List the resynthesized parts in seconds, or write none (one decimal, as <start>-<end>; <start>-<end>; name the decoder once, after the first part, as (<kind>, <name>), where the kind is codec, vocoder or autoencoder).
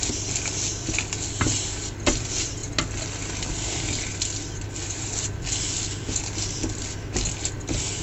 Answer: 4.8-5.3 (vocoder, BigVGAN v2)